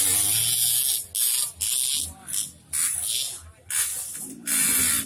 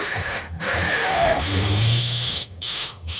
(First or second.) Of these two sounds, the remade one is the second